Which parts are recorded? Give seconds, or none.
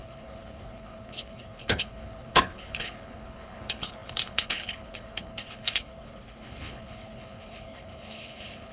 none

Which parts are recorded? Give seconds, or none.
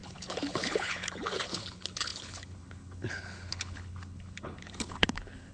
none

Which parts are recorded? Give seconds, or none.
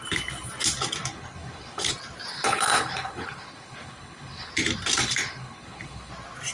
0.0-1.1; 1.9-2.3; 4.5-5.0; 6.1-6.5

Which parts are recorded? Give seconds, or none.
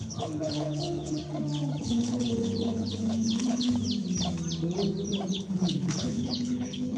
1.2-1.8; 3.7-5.3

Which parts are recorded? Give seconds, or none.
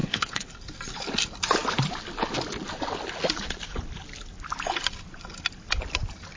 0.5-6.4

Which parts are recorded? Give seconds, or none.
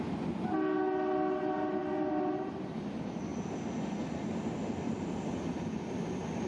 0.0-6.5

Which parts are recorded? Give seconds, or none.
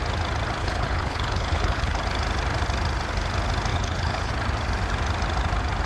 0.0-0.6; 2.0-3.7; 4.3-5.9